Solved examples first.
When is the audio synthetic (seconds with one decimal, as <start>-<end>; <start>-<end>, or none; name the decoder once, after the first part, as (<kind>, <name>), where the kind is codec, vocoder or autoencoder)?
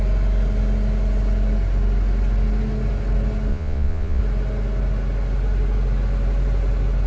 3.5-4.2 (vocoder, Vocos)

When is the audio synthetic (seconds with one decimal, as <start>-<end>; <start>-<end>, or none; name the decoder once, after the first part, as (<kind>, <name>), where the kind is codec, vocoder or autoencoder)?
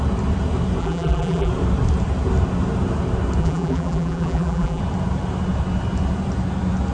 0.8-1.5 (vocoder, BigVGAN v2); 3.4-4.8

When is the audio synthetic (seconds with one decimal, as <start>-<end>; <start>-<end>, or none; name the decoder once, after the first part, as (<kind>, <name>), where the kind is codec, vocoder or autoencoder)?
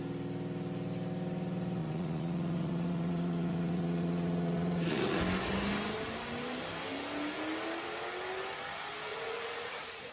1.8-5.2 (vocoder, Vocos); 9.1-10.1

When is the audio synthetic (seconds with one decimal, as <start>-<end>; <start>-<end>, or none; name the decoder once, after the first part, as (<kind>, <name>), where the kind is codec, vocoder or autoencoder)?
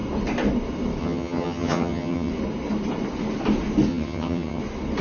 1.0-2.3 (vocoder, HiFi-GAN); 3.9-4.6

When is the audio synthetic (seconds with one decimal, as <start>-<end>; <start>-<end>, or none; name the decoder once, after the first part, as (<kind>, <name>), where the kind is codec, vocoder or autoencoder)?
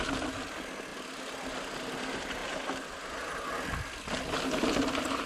none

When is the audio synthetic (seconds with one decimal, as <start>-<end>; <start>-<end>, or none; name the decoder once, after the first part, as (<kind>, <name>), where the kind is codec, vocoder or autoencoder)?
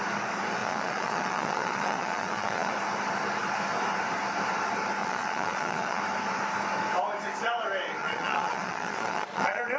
0.6-2.7 (vocoder, Vocos); 5.0-6.0; 8.0-9.8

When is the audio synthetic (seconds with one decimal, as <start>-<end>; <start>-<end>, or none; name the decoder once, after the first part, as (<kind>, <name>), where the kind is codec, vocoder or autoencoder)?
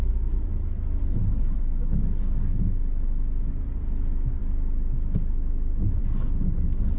none